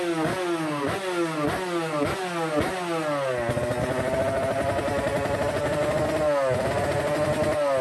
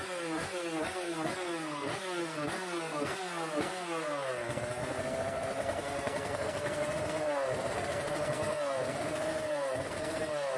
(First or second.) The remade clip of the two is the second